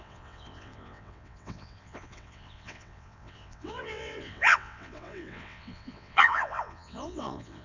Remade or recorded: remade